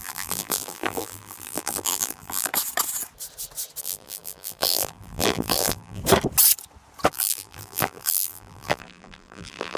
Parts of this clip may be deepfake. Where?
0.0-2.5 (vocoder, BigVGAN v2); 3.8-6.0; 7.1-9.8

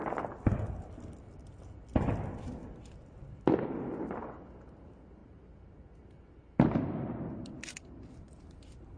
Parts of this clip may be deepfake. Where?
none

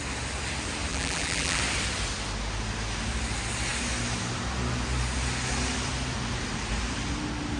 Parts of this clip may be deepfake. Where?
0.9-1.6 (vocoder, BigVGAN v2)

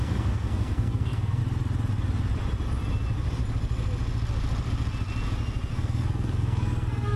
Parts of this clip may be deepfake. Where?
0.0-1.4 (codec, SNAC); 5.7-7.2

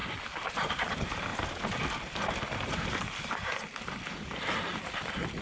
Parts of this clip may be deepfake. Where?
0.0-1.3 (vocoder, BigVGAN v2); 3.8-5.4

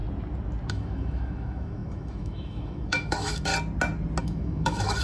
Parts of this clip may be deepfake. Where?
0.7-3.5 (autoencoder, DAC-VAE); 4.2-5.0